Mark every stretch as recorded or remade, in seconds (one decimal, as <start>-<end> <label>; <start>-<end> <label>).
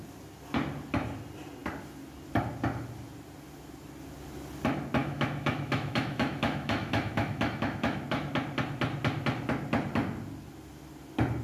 0.0-5.0 recorded; 5.0-8.0 remade; 8.0-11.4 recorded